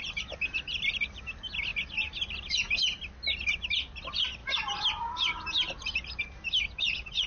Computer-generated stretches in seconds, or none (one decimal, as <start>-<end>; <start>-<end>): 4.4-6.2